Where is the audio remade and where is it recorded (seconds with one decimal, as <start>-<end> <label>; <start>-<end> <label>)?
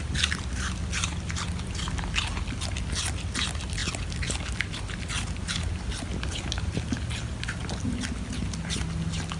0.0-9.4 recorded